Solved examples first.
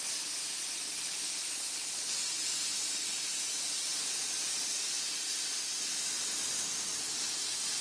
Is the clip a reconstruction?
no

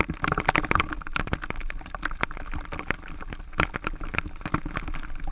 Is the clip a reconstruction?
no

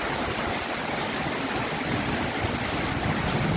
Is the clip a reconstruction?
no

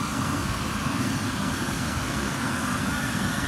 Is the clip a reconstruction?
yes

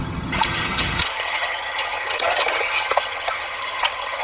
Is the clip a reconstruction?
yes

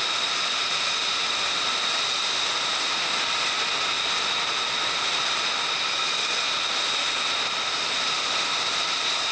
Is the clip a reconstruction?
no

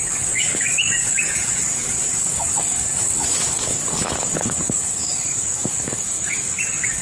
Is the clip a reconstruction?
yes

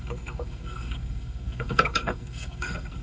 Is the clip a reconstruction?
yes